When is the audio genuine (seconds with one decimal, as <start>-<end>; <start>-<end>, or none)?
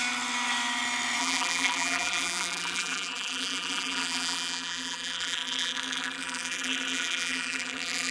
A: 0.0-1.2